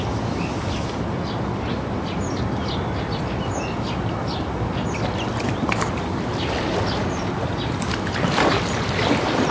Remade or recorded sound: recorded